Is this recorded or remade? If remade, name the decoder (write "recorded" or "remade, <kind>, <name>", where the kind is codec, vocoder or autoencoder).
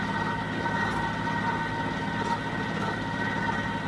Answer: recorded